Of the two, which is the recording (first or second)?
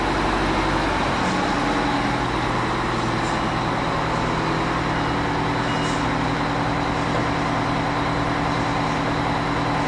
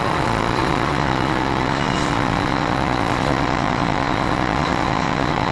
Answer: first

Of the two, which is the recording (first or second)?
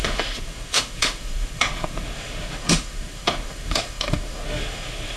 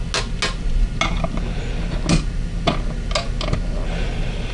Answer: second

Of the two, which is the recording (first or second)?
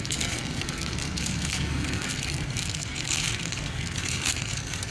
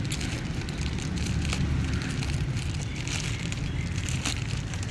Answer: second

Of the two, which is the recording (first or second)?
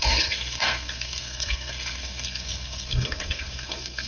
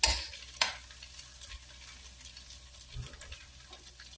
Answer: second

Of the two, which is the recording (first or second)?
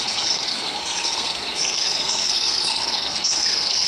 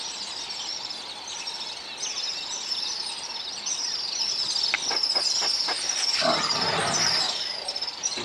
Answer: second